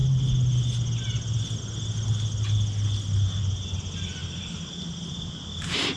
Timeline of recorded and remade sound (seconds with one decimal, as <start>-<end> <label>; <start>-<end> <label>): 0.0-6.0 recorded